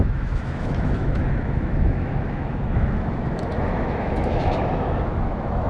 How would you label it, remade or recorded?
remade